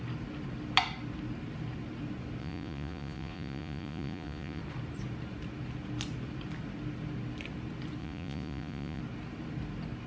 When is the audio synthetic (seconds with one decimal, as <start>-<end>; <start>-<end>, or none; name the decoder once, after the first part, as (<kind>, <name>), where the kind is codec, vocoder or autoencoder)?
2.4-4.6 (vocoder, Vocos); 8.0-9.0